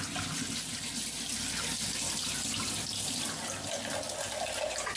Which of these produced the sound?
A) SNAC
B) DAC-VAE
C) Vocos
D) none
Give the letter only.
D